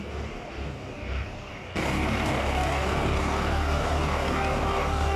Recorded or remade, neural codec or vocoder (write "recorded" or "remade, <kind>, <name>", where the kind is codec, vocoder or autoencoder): remade, codec, DAC